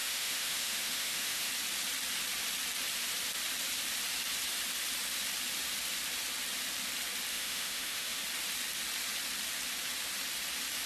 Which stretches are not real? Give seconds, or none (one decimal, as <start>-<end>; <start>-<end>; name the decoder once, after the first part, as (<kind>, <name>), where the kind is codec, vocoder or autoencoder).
0.0-1.5 (autoencoder, DAC-VAE); 7.3-8.2